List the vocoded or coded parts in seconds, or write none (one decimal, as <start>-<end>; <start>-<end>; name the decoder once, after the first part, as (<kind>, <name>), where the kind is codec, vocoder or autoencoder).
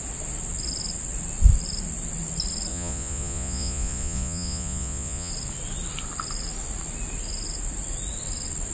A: 2.7-5.3 (vocoder, Vocos)